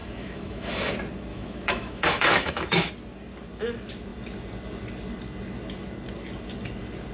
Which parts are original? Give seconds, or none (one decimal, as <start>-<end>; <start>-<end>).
0.9-1.3; 2.9-7.1